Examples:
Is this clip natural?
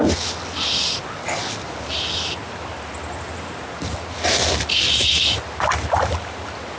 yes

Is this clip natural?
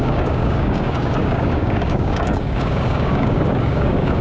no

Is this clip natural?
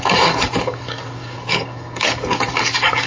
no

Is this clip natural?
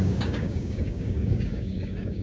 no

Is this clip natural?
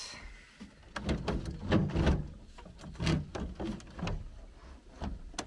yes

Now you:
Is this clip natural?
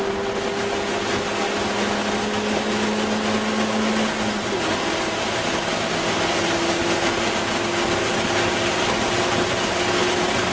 yes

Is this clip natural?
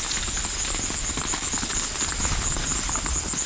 yes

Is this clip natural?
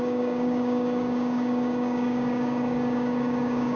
no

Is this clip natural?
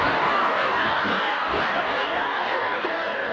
no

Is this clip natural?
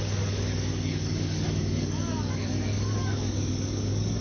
no